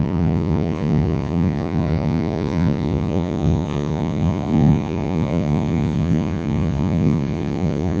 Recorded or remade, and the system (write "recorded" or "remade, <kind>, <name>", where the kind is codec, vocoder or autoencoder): remade, vocoder, Vocos